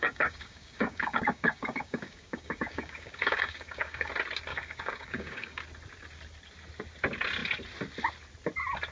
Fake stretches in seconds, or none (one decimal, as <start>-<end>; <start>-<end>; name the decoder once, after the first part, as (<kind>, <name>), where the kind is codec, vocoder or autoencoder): 0.0-4.1 (codec, DAC); 4.5-5.6